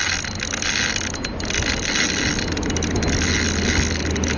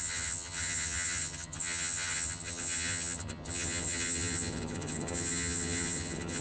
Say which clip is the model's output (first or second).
second